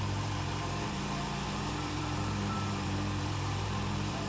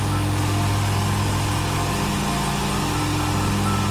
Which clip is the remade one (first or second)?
first